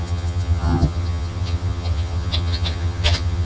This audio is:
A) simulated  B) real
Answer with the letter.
A